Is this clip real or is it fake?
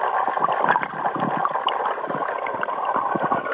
real